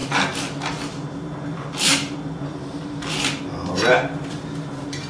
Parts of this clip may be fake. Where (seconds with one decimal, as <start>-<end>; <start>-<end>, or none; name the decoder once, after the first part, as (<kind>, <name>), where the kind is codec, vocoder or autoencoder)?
0.0-3.1 (vocoder, BigVGAN v2)